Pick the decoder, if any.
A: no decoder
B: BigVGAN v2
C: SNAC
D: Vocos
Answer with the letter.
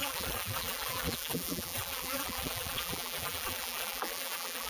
B